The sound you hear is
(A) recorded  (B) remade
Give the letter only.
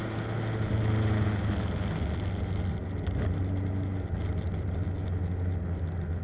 A